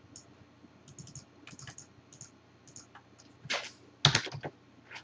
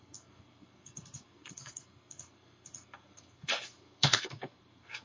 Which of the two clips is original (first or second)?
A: first